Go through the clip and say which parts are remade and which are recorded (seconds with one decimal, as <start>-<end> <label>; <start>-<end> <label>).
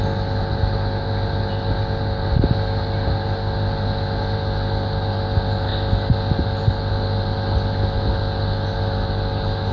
0.0-9.7 recorded